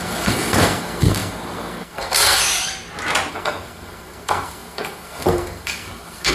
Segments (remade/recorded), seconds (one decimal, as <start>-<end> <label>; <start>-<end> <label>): 0.0-2.4 remade; 2.4-3.3 recorded; 3.3-6.3 remade